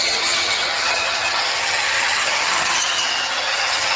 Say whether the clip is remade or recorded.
remade